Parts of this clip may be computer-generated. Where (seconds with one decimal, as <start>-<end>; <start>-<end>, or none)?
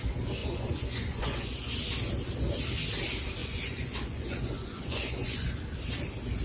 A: 0.4-1.7; 3.4-5.5